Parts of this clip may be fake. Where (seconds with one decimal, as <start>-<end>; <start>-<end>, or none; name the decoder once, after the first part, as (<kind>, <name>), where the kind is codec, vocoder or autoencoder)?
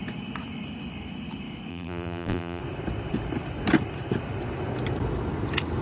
1.7-2.6 (vocoder, BigVGAN v2)